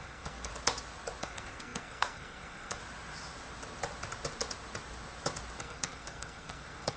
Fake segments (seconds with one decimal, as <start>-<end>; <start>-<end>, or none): 0.0-0.5; 1.2-2.8; 5.6-7.0